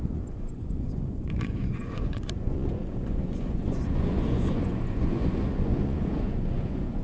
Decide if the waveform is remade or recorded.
remade